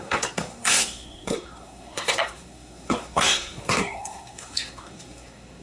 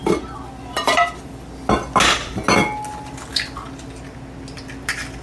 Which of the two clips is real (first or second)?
second